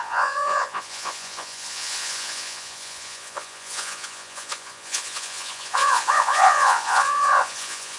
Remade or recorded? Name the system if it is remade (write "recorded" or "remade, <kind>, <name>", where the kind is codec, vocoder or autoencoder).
remade, vocoder, Vocos